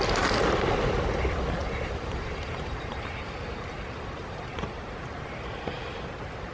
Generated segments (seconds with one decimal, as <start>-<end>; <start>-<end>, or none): 1.6-5.5